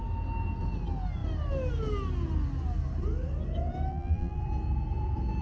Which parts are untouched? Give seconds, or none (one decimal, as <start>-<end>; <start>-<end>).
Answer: 0.0-3.9; 4.4-5.4